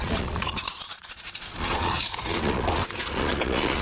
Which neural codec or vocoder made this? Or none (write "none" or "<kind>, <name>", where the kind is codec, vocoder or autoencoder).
vocoder, Vocos